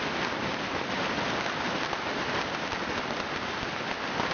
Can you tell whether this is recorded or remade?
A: recorded